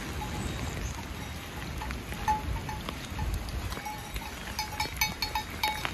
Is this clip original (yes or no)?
yes